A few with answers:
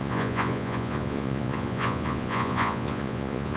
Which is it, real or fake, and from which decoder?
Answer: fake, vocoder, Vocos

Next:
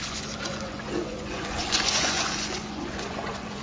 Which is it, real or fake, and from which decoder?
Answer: fake, vocoder, Vocos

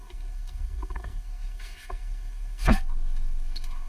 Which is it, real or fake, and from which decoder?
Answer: fake, codec, SNAC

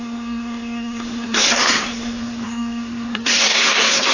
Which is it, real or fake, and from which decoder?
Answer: fake, codec, SNAC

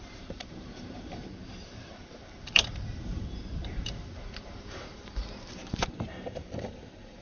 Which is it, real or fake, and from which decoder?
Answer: fake, vocoder, BigVGAN v2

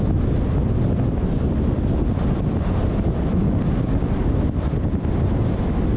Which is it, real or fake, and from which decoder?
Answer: real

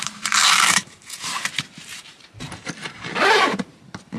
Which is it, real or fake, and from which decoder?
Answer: fake, vocoder, BigVGAN v2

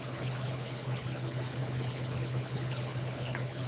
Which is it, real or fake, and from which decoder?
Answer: fake, codec, HILCodec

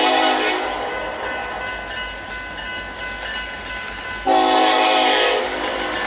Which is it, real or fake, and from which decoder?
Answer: real